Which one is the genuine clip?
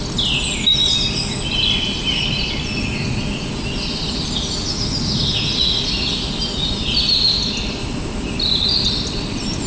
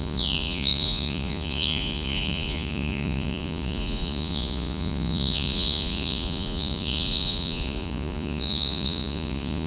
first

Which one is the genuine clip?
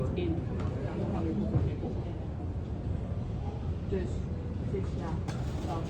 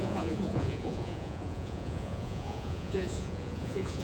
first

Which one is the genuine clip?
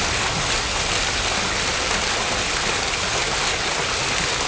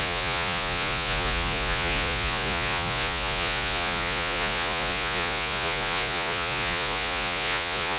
first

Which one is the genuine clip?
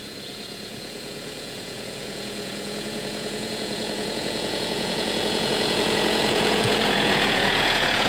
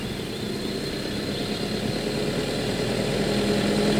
second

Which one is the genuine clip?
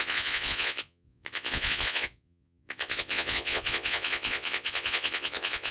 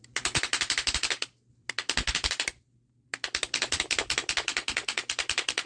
second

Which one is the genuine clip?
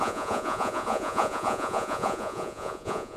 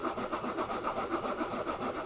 second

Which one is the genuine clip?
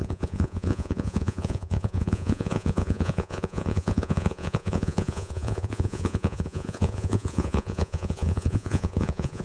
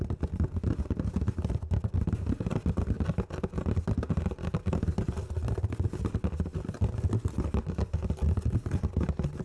second